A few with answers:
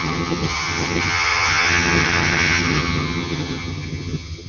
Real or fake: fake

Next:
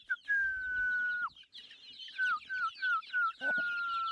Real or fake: real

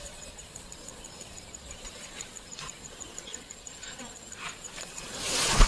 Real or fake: fake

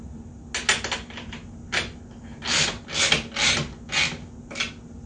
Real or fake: real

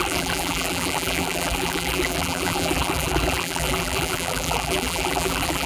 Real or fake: fake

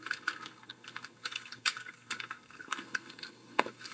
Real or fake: fake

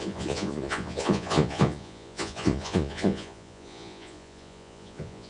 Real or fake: fake